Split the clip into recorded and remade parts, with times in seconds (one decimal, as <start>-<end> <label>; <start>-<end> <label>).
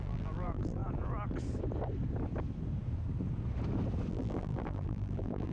0.0-0.8 remade; 0.8-4.1 recorded; 4.1-5.5 remade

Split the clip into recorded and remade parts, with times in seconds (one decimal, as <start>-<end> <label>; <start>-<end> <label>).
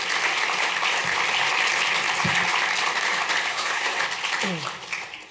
0.0-3.5 recorded; 3.5-4.0 remade; 4.0-5.3 recorded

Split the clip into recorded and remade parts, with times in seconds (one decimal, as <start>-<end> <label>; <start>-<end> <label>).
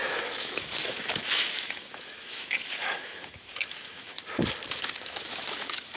0.0-4.1 remade; 4.1-4.7 recorded; 4.7-6.0 remade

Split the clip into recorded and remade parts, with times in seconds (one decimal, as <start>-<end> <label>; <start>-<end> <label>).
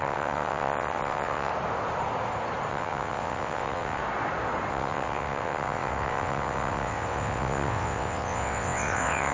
0.0-1.5 remade; 1.5-2.7 recorded; 2.7-4.0 remade; 4.0-4.7 recorded; 4.7-9.3 remade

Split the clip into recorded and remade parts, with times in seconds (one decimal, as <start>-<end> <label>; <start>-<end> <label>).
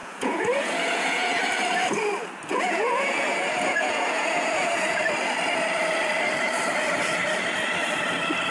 0.0-1.6 remade; 1.6-2.5 recorded; 2.5-5.0 remade; 5.0-8.5 recorded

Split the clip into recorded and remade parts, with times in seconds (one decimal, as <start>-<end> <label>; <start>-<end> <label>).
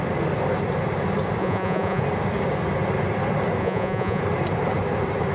0.0-1.4 recorded; 1.4-2.0 remade; 2.0-3.6 recorded; 3.6-4.2 remade; 4.2-5.3 recorded